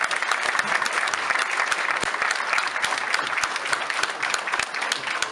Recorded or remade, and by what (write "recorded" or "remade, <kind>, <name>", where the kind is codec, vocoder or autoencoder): recorded